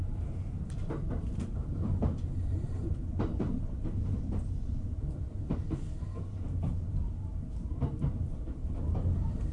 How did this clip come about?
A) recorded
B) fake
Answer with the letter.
B